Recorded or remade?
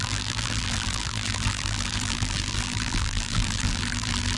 remade